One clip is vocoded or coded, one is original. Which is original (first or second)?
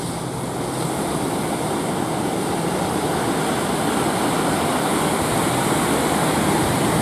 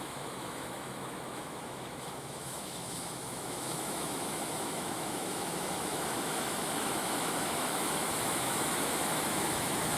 first